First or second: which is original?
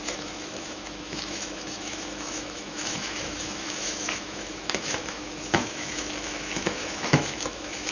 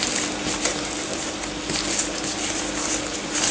second